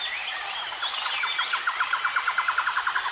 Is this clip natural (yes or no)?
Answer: yes